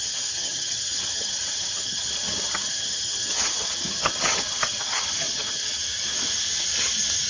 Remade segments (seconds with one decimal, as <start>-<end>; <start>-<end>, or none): 0.0-5.8